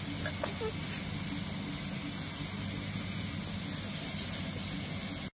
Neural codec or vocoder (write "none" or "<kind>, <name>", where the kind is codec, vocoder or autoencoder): none